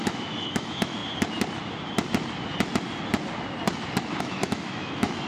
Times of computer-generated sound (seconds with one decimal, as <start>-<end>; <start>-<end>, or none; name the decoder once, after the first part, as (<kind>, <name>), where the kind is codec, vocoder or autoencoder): 0.0-1.0 (autoencoder, DAC-VAE); 4.2-5.3